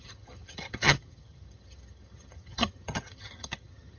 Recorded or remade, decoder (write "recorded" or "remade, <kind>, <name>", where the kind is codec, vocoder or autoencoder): remade, vocoder, HiFi-GAN